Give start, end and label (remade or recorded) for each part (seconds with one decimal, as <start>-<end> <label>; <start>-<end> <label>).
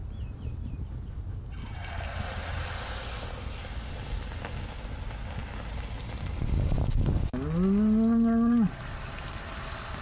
0.0-10.0 recorded